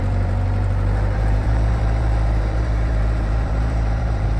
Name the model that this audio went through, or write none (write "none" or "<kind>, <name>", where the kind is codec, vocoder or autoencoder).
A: vocoder, BigVGAN v2